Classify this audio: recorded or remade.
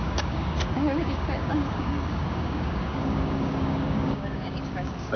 remade